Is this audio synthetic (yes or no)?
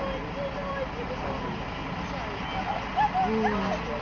no